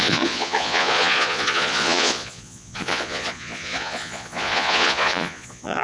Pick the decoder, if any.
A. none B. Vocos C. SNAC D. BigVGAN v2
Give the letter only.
B